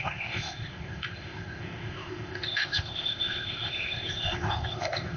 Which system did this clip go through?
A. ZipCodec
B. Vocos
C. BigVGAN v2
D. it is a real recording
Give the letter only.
A